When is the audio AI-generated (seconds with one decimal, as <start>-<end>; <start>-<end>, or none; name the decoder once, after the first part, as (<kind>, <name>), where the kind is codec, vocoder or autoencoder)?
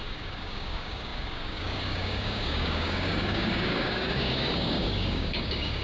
0.0-5.8 (codec, DAC)